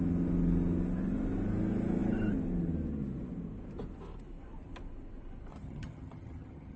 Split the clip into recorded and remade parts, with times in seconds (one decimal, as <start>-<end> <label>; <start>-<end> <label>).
0.0-5.5 recorded; 5.5-6.8 remade